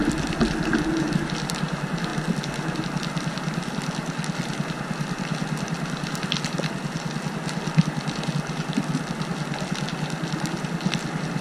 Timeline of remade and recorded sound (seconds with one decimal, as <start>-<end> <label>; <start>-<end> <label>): 0.0-11.4 recorded